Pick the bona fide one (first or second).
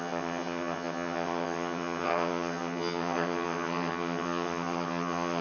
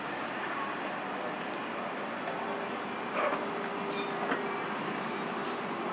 second